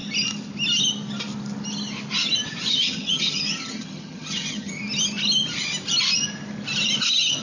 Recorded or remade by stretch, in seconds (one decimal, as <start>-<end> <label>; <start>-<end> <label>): 0.0-2.7 recorded; 2.7-4.8 remade; 4.8-7.0 recorded; 7.0-7.4 remade